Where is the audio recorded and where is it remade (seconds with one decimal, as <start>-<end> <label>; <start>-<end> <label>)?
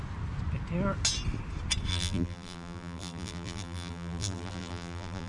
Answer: 0.0-1.9 recorded; 1.9-5.3 remade